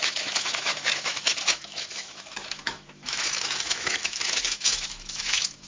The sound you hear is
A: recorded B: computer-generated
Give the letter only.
B